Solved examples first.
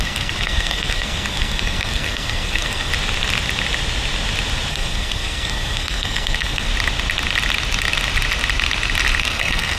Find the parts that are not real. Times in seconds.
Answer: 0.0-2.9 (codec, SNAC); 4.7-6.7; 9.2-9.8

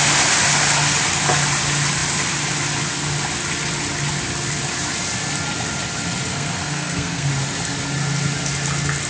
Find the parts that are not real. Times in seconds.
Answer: 6.3-7.3 (codec, SNAC)

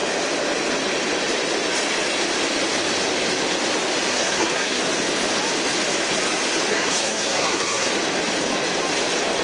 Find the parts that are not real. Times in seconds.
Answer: 4.1-4.8 (codec, SNAC); 6.7-7.9